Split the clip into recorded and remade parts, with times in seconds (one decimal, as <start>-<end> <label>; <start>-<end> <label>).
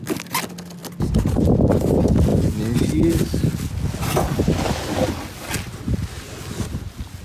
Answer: 0.0-7.2 recorded